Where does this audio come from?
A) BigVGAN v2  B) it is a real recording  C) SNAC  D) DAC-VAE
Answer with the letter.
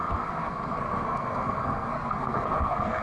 C